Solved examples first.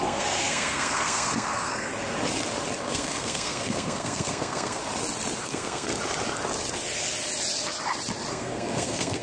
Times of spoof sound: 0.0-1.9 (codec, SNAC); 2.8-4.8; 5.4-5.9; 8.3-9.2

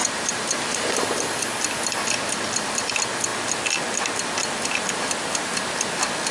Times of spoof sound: 0.0-1.6 (vocoder, BigVGAN v2)

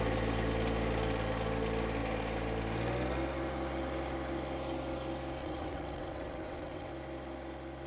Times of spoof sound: 5.4-6.9 (vocoder, WaveNeXt)

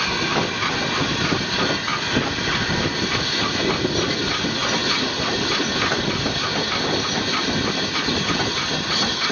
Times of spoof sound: none

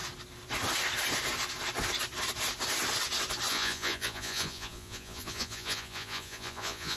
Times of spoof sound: 3.5-7.0 (vocoder, Vocos)

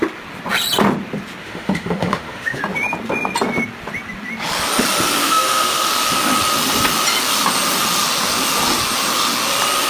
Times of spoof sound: 1.4-2.6 (autoencoder, DAC-VAE); 5.2-5.9

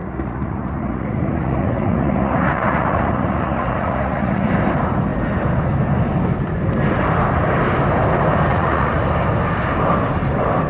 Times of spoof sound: 0.0-4.5 (vocoder, Vocos); 8.5-9.0

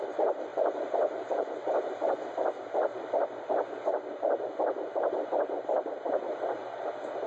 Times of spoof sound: none